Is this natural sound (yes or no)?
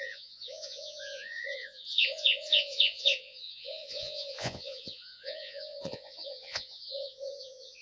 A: no